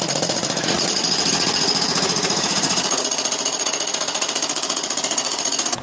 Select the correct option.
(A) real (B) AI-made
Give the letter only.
B